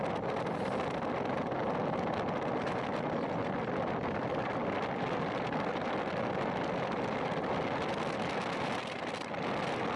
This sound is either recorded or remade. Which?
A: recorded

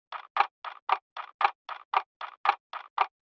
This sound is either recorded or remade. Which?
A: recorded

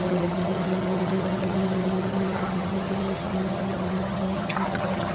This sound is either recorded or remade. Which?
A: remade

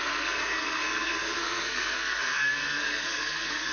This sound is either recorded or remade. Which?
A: remade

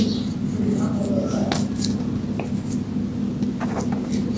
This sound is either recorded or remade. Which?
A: recorded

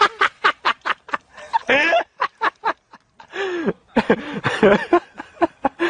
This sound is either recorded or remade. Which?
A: recorded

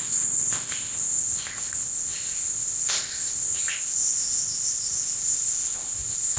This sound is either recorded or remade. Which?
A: remade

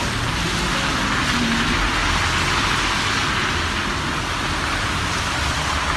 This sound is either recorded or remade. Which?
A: recorded